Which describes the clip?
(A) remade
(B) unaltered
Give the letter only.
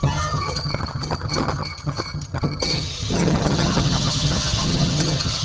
A